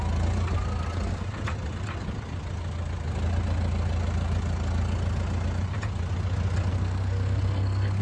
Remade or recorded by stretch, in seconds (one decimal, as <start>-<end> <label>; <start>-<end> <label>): 0.0-6.7 recorded; 6.7-8.0 remade